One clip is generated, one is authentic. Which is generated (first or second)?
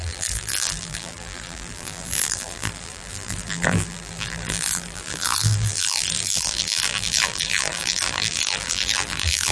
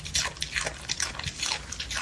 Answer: first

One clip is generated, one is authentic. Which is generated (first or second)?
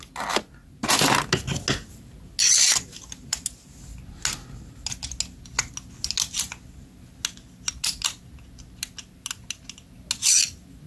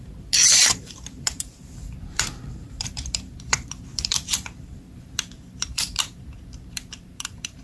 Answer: second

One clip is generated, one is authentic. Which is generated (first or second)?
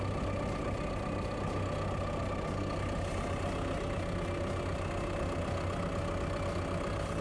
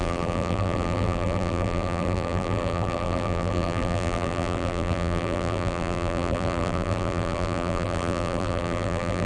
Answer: second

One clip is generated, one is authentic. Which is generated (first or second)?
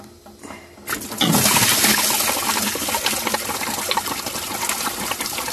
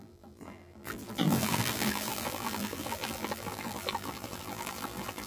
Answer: second